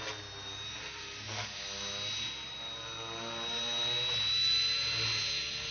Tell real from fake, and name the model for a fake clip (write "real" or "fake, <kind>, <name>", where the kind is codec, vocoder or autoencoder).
real